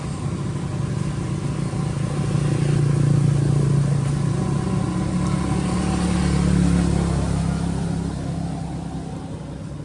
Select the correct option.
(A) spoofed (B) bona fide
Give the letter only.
B